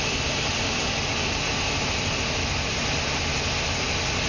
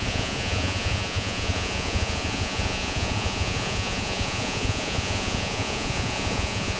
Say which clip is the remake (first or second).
second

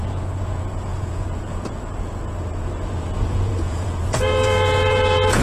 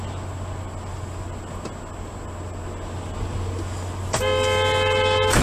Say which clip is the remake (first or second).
first